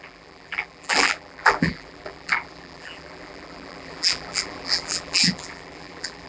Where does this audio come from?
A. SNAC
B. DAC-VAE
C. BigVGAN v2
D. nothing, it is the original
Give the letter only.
C